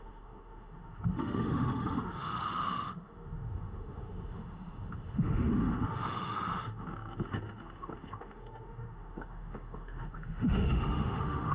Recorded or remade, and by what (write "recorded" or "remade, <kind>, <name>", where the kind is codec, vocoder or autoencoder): remade, autoencoder, DAC-VAE